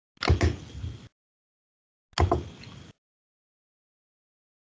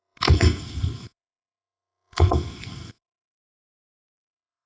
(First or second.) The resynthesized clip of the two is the second